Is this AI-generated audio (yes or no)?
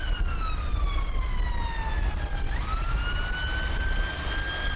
no